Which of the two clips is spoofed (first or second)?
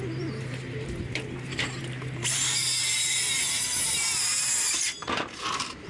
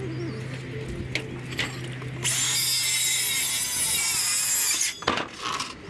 first